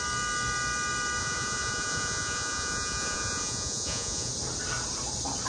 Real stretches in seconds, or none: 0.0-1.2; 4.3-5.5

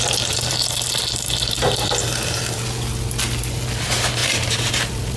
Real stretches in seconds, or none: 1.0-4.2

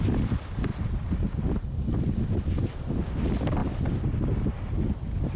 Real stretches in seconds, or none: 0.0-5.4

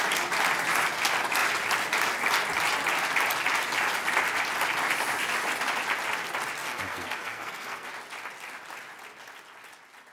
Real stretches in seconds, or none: 0.0-6.6; 7.9-10.1

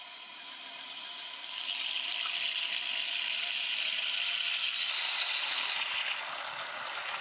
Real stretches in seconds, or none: 0.0-7.2

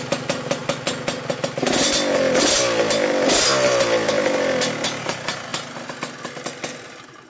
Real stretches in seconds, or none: 0.0-7.3

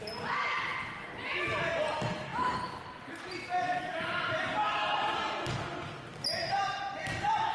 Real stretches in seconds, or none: 0.0-2.3; 3.1-3.9; 4.5-7.5